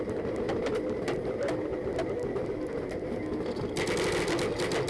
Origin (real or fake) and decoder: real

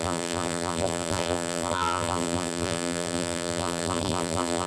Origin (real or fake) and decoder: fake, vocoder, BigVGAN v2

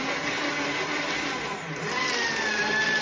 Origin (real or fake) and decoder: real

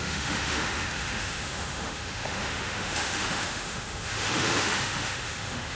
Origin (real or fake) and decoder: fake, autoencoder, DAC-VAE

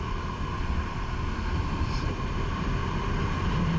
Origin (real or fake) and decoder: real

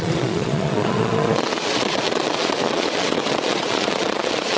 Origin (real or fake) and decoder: fake, vocoder, Vocos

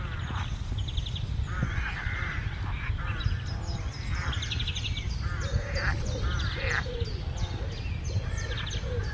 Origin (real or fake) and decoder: real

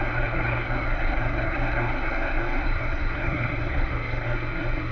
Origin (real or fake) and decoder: fake, codec, SNAC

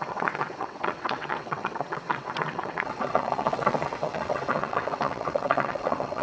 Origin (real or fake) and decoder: fake, vocoder, WaveNeXt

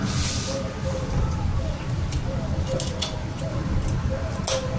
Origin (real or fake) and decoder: real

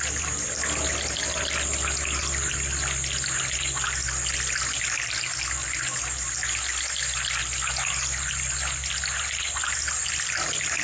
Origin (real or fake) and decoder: real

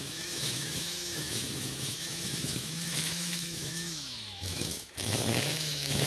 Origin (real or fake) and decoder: fake, autoencoder, DAC-VAE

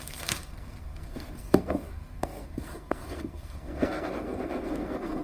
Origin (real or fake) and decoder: fake, codec, SNAC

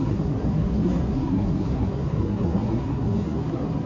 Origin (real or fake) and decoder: fake, codec, SNAC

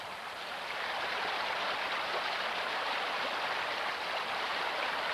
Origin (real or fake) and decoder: real